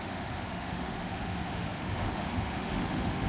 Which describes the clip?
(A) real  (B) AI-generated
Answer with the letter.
B